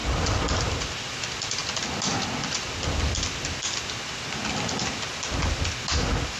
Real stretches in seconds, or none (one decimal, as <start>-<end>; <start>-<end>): 0.0-6.4